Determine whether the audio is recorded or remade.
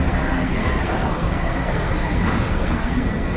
remade